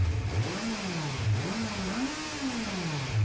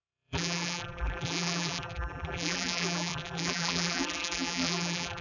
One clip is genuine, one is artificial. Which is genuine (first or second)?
first